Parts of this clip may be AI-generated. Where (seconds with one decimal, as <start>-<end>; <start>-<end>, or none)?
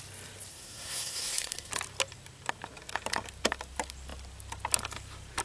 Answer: 0.5-1.7